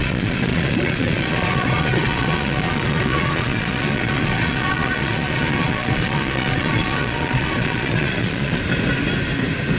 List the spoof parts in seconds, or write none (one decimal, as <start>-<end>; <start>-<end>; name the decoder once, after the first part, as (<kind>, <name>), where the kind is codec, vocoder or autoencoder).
0.0-8.6 (vocoder, Vocos)